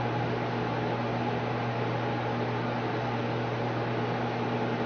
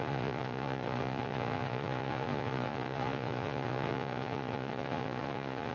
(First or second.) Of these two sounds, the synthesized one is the second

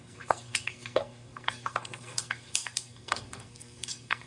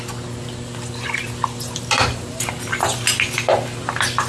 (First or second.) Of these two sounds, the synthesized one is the first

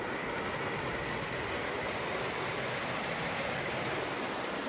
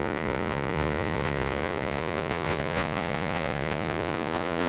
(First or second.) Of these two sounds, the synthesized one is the second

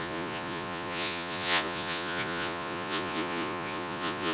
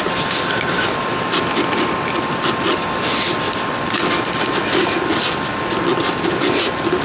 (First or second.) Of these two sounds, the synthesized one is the first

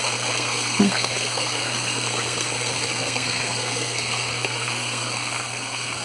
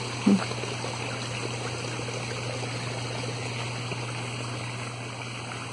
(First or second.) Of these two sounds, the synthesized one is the first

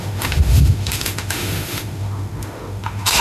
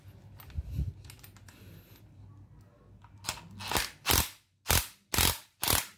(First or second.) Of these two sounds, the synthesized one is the first